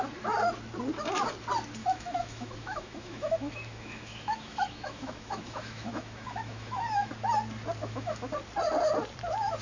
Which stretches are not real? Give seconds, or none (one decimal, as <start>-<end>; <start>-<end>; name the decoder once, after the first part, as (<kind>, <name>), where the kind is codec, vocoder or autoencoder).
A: 1.8-7.1 (autoencoder, DAC-VAE); 7.8-8.3